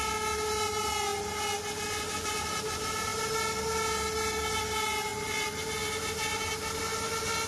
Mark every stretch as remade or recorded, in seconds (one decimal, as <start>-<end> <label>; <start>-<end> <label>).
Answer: 0.0-7.5 recorded